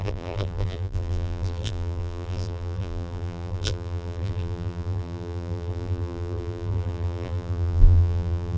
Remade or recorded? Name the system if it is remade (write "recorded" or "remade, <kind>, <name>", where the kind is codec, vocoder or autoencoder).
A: remade, vocoder, BigVGAN v2